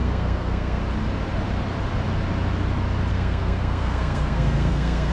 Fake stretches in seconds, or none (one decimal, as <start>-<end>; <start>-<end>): 0.0-0.8; 3.1-5.1